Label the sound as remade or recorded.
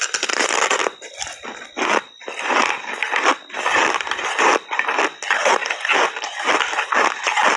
recorded